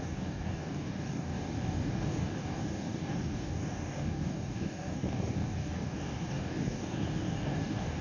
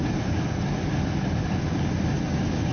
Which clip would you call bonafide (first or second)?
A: second